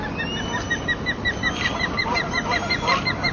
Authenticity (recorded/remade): recorded